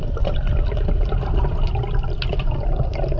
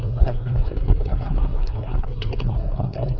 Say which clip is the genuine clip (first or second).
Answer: first